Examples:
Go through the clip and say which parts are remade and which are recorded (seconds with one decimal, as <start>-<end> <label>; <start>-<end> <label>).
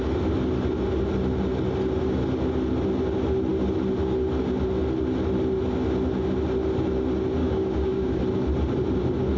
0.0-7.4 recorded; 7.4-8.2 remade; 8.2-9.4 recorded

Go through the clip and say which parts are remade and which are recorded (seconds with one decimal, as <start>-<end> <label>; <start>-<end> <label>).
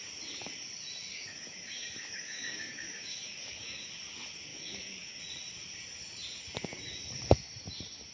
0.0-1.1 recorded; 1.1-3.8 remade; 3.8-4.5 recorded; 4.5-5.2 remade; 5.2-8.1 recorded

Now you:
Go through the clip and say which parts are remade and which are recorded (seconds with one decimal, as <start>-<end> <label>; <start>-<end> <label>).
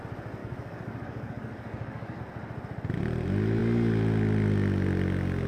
0.0-0.4 recorded; 0.4-2.2 remade; 2.2-5.5 recorded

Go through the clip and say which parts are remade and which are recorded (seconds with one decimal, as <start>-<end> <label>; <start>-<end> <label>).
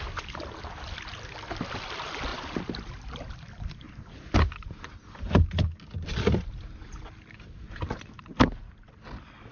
0.0-9.5 recorded